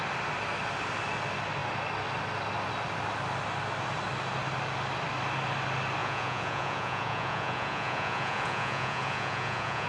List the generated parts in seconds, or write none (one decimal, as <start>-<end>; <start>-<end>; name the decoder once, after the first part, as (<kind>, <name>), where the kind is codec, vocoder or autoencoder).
6.0-9.9 (vocoder, Vocos)